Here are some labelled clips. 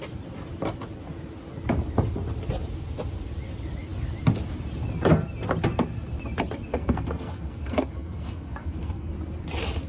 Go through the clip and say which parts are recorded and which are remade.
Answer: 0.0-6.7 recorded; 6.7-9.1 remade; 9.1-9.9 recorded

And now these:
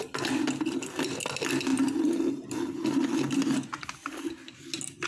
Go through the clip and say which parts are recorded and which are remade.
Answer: 0.0-5.1 recorded

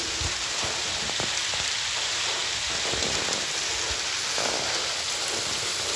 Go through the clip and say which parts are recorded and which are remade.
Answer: 0.0-6.0 recorded

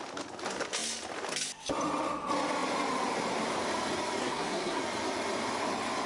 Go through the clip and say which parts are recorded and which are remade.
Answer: 0.0-4.2 recorded; 4.2-4.8 remade; 4.8-6.1 recorded

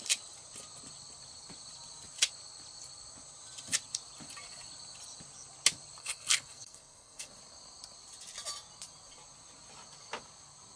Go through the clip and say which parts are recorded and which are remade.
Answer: 0.0-6.0 recorded; 6.0-7.3 remade; 7.3-10.8 recorded